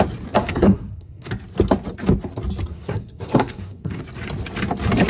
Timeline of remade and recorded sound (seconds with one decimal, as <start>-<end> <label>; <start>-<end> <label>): 0.0-0.4 recorded; 0.4-1.3 remade; 1.3-2.7 recorded; 2.7-4.0 remade; 4.0-5.1 recorded